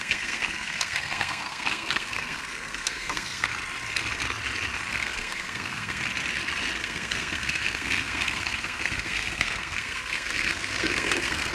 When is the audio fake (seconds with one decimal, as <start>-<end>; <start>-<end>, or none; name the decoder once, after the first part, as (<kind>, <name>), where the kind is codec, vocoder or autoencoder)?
0.0-3.5 (codec, SNAC); 4.9-6.0; 6.8-11.5